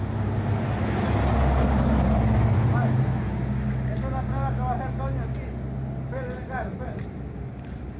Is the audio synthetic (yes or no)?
no